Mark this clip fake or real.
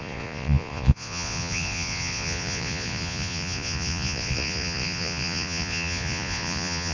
fake